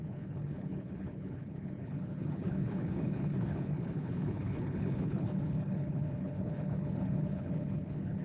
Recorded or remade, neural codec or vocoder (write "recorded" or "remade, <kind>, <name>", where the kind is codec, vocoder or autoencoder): remade, codec, HILCodec